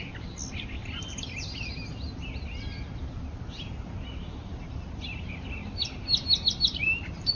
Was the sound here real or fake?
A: real